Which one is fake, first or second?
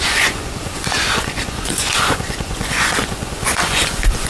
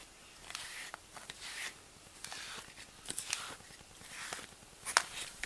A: first